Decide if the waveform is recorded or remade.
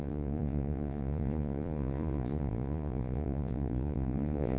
remade